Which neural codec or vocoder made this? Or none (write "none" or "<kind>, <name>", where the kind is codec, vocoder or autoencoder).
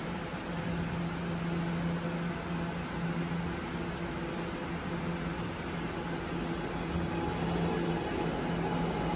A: none